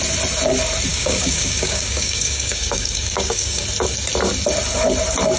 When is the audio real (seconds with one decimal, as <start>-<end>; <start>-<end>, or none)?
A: 0.0-0.9; 3.6-5.4